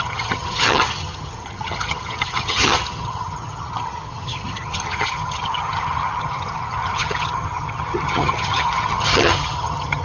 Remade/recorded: remade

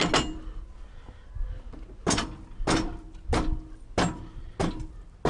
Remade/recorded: recorded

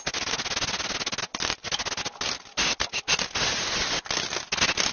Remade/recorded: recorded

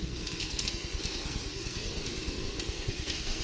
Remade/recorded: remade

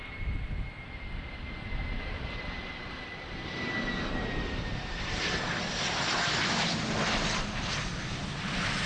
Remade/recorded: recorded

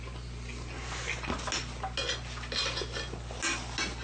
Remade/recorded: recorded